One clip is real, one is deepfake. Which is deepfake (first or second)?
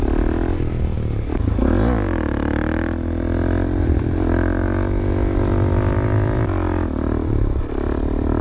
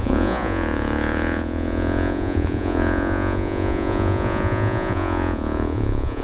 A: second